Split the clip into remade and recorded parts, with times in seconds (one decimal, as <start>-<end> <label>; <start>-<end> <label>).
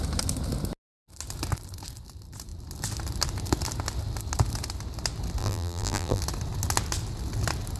0.0-5.4 recorded; 5.4-6.2 remade; 6.2-7.8 recorded